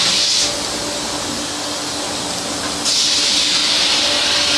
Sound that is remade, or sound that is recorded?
recorded